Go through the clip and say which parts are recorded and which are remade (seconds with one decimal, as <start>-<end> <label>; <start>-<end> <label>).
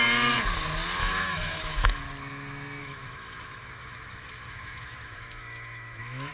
0.0-1.0 recorded; 1.0-2.0 remade; 2.0-2.8 recorded; 2.8-6.3 remade